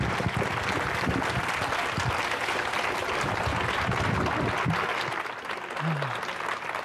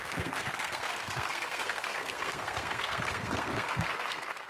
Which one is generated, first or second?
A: second